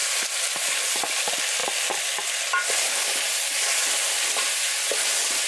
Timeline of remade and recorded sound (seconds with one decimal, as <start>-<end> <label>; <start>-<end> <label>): 0.0-1.0 remade; 1.0-5.5 recorded